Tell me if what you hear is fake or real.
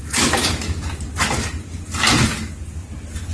real